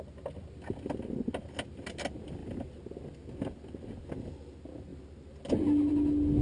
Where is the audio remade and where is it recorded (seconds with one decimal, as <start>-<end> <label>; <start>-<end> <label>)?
0.0-6.4 recorded